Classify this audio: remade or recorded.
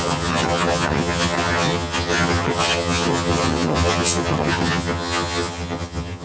remade